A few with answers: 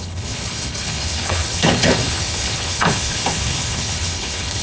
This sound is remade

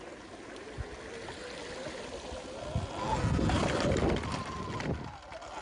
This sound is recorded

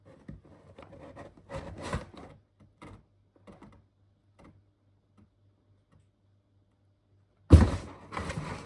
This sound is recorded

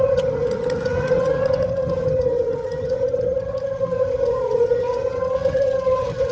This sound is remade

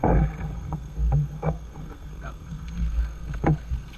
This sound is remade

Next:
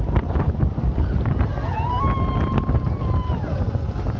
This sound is recorded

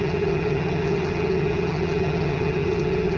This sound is remade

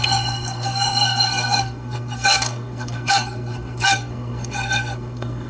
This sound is remade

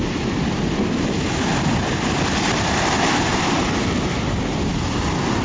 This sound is recorded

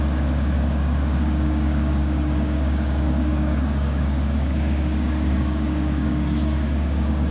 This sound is remade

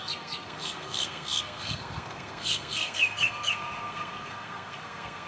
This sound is remade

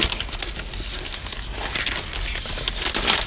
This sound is recorded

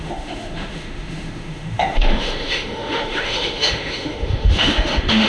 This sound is remade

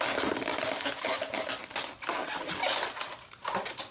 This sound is recorded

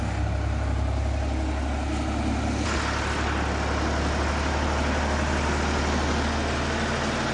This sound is recorded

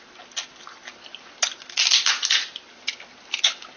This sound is recorded